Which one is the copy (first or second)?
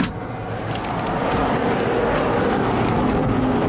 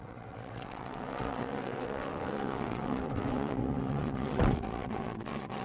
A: second